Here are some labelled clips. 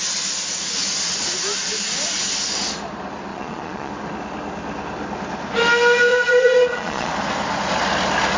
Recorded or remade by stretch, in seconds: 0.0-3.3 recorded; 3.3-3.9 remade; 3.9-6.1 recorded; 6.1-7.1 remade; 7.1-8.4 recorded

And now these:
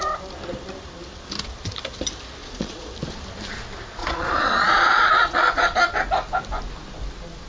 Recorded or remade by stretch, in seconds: 0.0-2.4 recorded; 2.4-2.9 remade; 2.9-4.0 recorded; 4.0-5.6 remade; 5.6-7.5 recorded

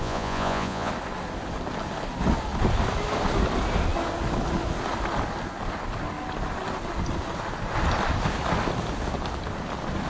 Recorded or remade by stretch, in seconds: 0.0-0.9 remade; 0.9-10.1 recorded

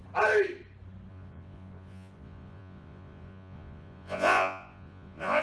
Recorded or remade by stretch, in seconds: 0.0-1.1 recorded; 1.1-5.4 remade

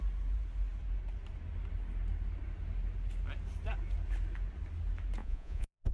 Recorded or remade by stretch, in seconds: 0.0-5.2 recorded; 5.2-5.9 remade

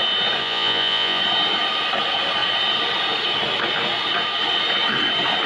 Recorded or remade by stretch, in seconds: 0.0-0.4 recorded; 0.4-1.2 remade; 1.2-5.5 recorded

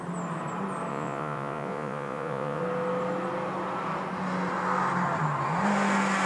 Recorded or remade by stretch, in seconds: 0.0-0.9 recorded; 0.9-2.6 remade; 2.6-6.3 recorded

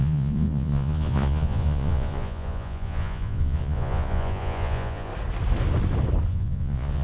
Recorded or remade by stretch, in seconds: 0.0-5.1 remade; 5.1-6.3 recorded; 6.3-7.0 remade